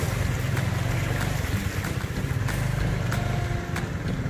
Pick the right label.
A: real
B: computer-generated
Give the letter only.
A